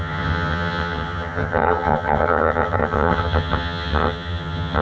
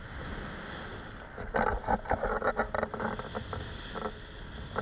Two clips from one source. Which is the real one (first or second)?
second